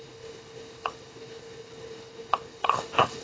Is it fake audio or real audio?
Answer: fake